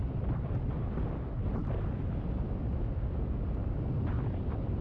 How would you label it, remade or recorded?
recorded